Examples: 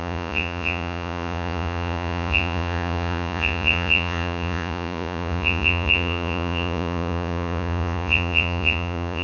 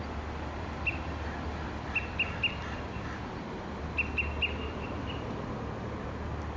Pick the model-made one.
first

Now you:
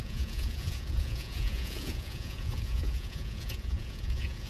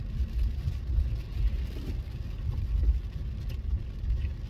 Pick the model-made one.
first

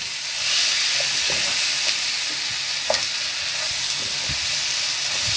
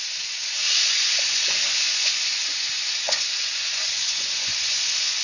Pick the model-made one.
second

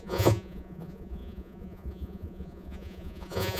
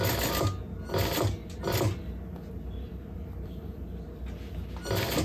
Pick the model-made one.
first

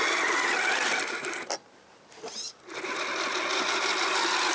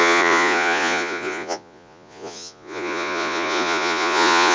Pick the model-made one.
second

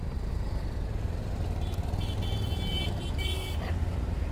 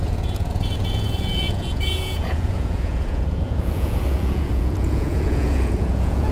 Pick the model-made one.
second